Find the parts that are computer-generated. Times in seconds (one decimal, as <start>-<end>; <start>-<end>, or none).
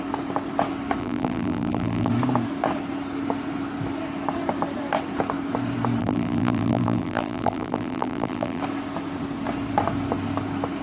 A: 1.0-2.1; 6.0-8.6